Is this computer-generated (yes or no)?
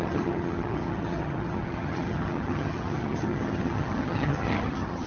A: yes